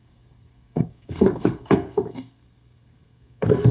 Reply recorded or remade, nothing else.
remade